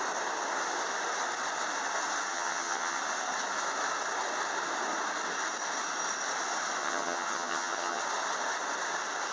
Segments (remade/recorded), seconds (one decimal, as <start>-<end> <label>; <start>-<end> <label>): 0.0-2.3 recorded; 2.3-3.0 remade; 3.0-6.8 recorded; 6.8-8.0 remade; 8.0-9.3 recorded